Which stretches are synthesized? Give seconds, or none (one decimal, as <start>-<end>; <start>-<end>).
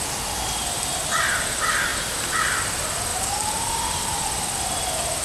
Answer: 1.9-2.6; 3.1-4.2